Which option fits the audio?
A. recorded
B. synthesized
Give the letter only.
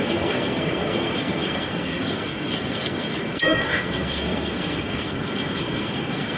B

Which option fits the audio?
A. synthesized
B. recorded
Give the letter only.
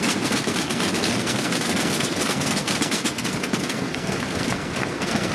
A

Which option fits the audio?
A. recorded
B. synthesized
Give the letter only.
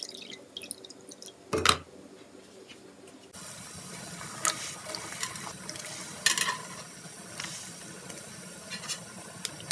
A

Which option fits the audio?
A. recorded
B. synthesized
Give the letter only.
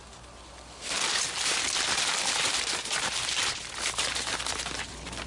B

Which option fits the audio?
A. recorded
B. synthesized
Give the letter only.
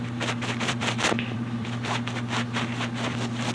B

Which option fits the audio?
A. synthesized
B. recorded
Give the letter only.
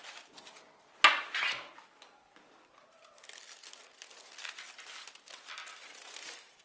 B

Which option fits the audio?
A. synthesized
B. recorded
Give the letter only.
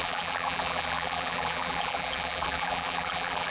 A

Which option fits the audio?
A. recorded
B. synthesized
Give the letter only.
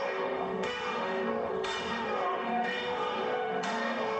B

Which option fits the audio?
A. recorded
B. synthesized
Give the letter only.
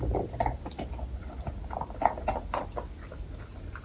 A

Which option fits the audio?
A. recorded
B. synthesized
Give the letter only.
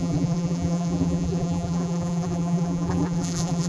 B